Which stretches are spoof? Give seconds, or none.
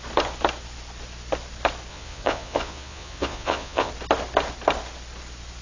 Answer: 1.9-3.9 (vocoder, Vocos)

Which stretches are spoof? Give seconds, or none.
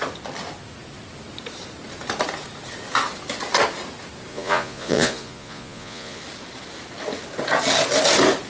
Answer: 4.3-6.2 (vocoder, Vocos)